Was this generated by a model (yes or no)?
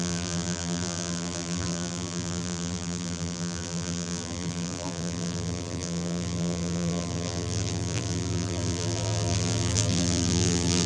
yes